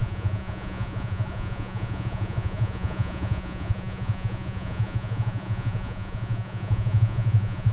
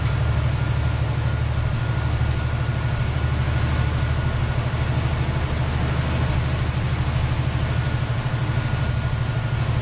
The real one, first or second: second